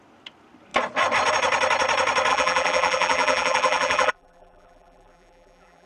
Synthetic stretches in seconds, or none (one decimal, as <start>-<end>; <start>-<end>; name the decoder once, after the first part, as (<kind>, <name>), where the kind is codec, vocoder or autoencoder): 2.3-5.9 (vocoder, BigVGAN v2)